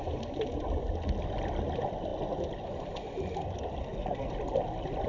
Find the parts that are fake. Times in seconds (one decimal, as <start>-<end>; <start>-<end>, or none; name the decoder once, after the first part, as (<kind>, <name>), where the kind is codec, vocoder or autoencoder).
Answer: 3.8-4.3 (codec, SNAC)